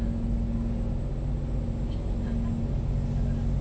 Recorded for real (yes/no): yes